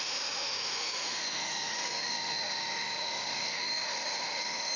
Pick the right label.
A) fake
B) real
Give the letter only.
A